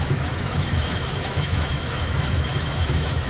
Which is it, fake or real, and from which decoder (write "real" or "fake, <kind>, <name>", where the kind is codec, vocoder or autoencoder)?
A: fake, autoencoder, DAC-VAE